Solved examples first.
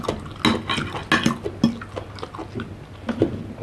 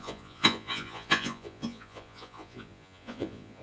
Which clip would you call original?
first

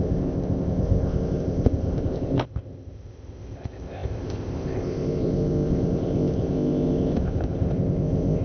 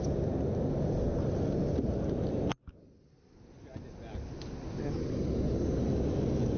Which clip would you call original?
second